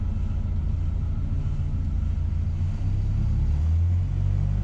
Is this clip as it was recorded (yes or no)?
yes